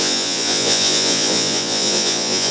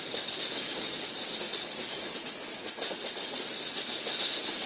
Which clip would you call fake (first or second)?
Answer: first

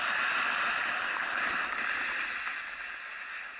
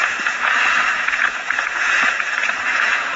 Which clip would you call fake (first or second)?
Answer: second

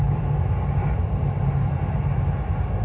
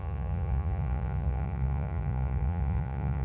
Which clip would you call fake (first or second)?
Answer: second